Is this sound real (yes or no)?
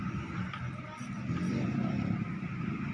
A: no